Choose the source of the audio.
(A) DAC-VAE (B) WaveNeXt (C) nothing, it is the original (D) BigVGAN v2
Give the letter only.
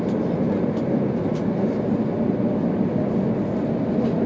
C